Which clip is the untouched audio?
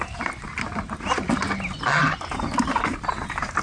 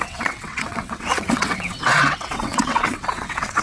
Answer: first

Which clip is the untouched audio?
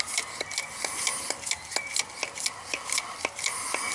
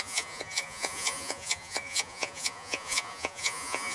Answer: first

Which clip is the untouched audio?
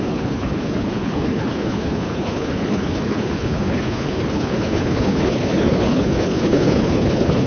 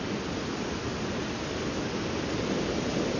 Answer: second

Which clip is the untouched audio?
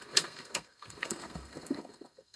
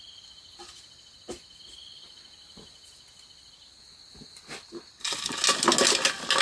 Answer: second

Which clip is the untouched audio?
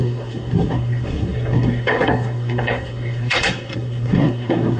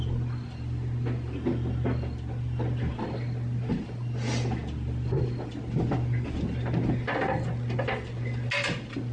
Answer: second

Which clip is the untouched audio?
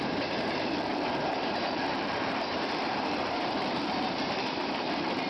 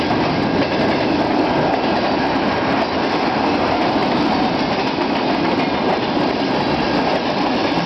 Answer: second